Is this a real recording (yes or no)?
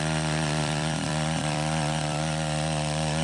no